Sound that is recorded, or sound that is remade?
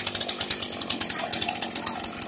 recorded